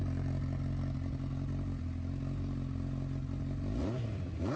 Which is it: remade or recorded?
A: recorded